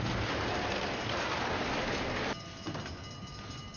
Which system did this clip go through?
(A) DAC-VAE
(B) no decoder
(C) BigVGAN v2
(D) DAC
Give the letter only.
B